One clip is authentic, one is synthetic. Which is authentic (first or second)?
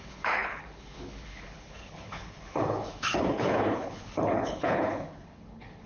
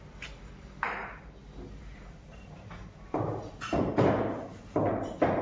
second